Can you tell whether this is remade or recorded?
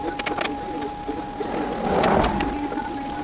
recorded